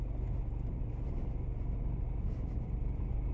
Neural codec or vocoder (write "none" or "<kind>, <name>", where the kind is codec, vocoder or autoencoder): none